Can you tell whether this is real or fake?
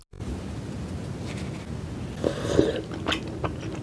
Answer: real